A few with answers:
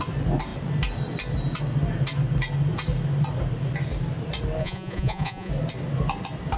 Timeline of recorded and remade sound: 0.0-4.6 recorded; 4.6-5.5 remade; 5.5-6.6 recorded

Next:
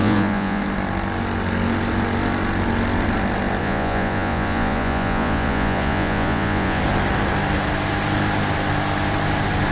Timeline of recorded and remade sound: 0.0-0.6 remade; 0.6-3.6 recorded; 3.6-6.8 remade; 6.8-9.7 recorded

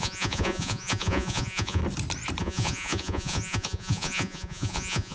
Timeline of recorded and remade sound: 0.0-1.8 remade; 1.8-2.4 recorded; 2.4-5.1 remade

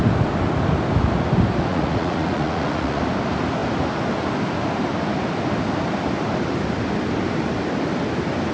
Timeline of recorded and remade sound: 0.0-1.7 recorded; 1.7-3.0 remade; 3.0-8.5 recorded

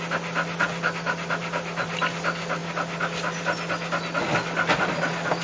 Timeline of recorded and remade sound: 0.0-5.4 recorded